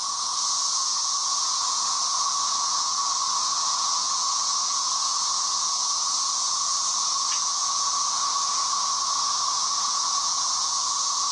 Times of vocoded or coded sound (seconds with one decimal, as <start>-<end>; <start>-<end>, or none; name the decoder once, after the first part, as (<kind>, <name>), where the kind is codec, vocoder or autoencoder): 0.0-11.3 (vocoder, Vocos)